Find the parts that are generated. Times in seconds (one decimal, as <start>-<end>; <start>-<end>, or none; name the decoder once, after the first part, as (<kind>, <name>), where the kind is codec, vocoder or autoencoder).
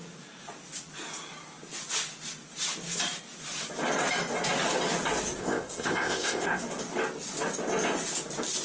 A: 5.4-6.6 (codec, ZipCodec)